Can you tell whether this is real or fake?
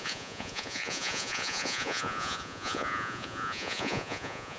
fake